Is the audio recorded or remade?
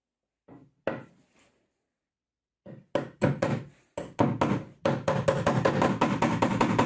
recorded